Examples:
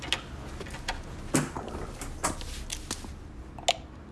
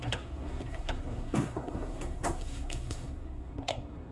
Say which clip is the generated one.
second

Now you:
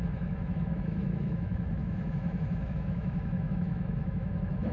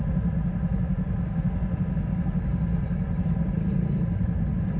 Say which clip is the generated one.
first